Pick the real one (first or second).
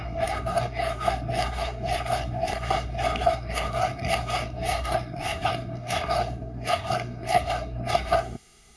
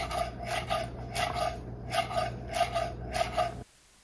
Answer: second